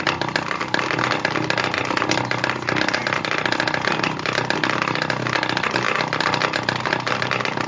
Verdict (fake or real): real